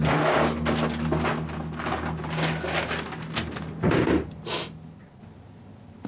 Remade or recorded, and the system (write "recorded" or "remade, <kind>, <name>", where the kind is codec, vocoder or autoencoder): recorded